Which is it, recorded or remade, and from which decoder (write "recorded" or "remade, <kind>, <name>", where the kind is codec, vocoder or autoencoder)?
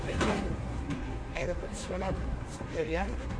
remade, codec, SNAC